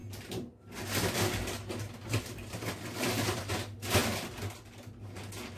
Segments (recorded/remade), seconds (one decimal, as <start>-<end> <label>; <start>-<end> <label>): 0.0-5.6 recorded